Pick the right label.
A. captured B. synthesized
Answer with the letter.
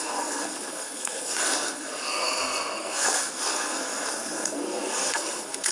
B